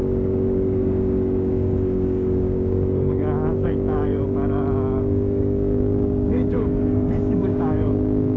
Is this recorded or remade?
remade